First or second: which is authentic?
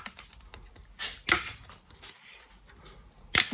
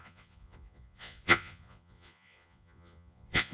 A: first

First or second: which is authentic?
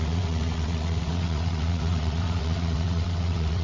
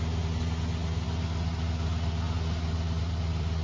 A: second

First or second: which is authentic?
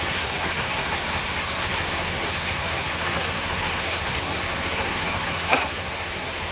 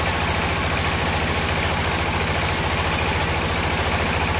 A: second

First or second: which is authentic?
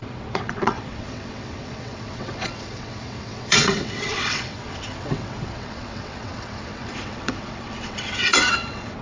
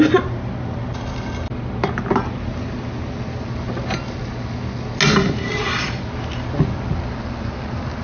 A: second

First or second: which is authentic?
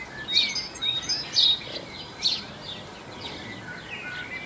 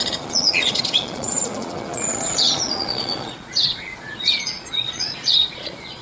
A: first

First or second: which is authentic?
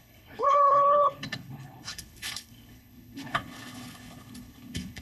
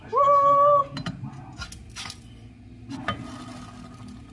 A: second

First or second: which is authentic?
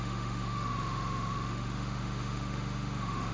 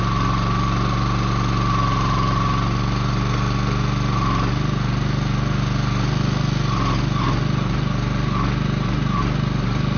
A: second